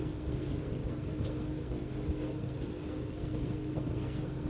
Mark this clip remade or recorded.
remade